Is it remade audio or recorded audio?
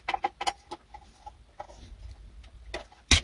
recorded